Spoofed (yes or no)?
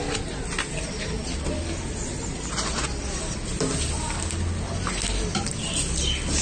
no